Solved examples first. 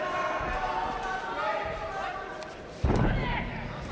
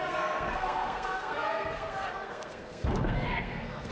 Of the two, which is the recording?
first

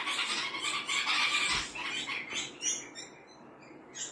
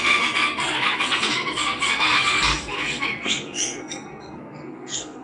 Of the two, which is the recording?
first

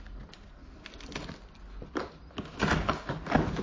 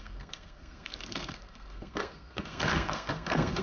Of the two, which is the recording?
first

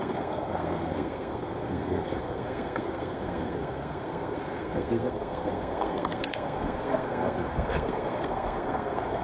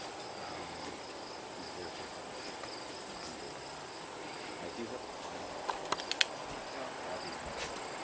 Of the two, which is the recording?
second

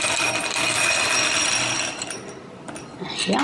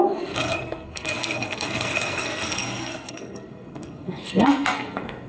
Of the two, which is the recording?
first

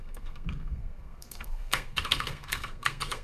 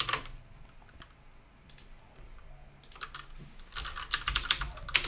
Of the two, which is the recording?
second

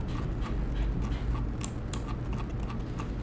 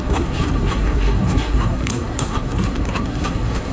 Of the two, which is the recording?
first